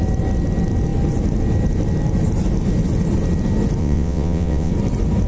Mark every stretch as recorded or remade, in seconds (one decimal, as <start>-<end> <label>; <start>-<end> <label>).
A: 0.0-3.8 recorded; 3.8-4.7 remade; 4.7-5.3 recorded